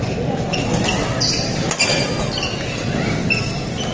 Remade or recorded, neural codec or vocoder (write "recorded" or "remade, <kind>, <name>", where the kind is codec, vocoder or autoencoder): recorded